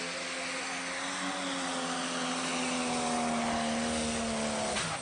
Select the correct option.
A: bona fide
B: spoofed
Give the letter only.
A